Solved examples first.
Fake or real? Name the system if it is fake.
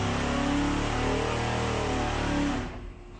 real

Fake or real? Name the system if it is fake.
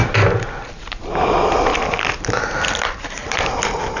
real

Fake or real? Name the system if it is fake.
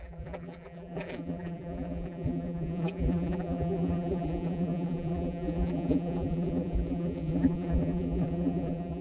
fake, vocoder, BigVGAN v2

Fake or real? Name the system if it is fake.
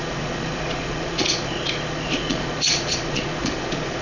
fake, vocoder, Vocos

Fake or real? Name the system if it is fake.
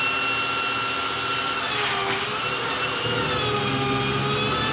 real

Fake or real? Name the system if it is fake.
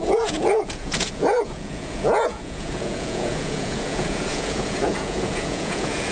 fake, vocoder, Vocos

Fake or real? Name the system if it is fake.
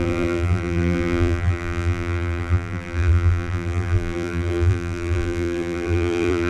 fake, vocoder, BigVGAN v2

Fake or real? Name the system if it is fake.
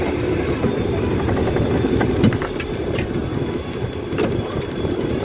fake, vocoder, BigVGAN v2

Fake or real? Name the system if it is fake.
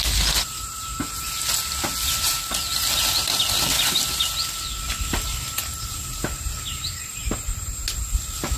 real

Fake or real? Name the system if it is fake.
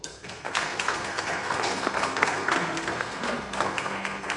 fake, codec, SNAC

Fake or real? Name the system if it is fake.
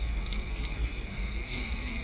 fake, codec, SNAC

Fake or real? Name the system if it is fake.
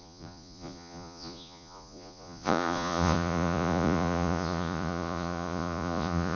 fake, vocoder, Vocos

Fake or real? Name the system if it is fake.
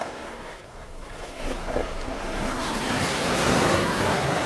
fake, codec, SNAC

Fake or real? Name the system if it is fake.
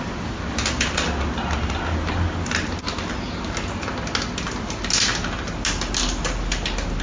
real